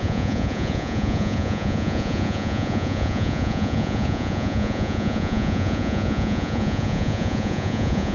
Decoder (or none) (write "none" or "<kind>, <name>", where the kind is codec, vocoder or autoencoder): vocoder, Vocos